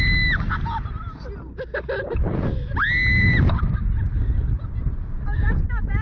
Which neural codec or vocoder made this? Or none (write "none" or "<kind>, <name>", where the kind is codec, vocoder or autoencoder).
none